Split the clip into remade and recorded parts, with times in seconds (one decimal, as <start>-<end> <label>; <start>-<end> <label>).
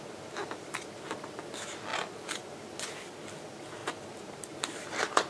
0.0-3.8 recorded; 3.8-5.3 remade